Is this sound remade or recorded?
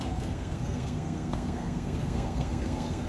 remade